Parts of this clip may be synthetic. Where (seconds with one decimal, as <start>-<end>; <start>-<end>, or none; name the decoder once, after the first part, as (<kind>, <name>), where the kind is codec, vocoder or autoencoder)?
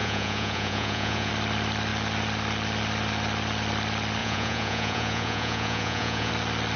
0.0-1.3 (vocoder, Vocos); 4.2-6.3